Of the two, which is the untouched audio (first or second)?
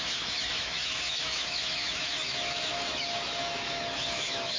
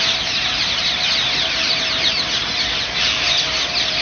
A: second